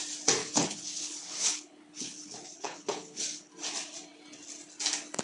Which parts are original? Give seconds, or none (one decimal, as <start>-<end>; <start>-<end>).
0.0-0.4; 3.5-5.2